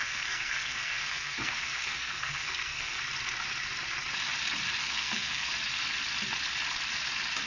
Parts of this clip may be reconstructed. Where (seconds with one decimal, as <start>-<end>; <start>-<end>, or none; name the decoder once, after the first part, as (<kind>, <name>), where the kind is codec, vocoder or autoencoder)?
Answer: 0.0-3.0 (codec, SNAC); 4.8-5.5